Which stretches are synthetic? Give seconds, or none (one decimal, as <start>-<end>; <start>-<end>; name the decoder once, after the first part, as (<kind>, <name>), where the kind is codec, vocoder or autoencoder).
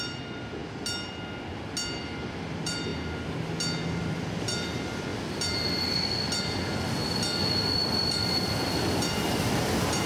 0.0-0.6 (vocoder, BigVGAN v2); 2.0-2.9; 4.4-5.1; 7.4-10.1